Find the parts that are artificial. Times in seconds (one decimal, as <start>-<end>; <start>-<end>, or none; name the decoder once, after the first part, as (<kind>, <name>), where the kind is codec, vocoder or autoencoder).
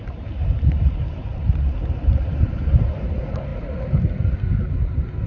1.3-2.8 (vocoder, BigVGAN v2)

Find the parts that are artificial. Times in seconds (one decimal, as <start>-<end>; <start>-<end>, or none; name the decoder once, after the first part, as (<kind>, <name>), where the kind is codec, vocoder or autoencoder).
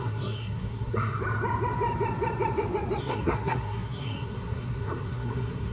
0.0-1.2 (codec, SNAC); 3.0-5.7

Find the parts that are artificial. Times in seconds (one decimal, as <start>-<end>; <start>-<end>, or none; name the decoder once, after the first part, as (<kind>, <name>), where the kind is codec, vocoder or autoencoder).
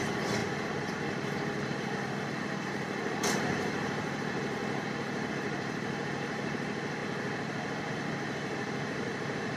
0.0-4.6 (vocoder, BigVGAN v2); 5.3-7.0; 7.9-9.6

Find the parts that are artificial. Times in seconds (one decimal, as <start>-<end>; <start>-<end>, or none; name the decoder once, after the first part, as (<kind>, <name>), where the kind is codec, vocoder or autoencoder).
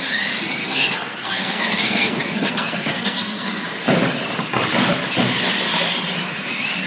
0.6-3.6 (codec, SNAC)